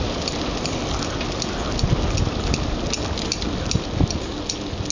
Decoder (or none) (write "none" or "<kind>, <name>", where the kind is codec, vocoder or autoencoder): none